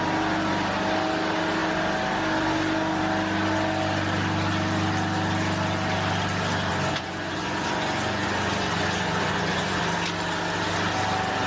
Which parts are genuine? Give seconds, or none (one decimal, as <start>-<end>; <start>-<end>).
0.0-6.7; 9.8-11.5